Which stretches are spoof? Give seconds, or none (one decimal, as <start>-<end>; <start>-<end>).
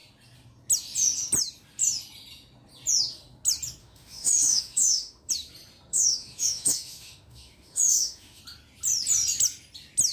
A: 3.8-5.3; 5.9-8.4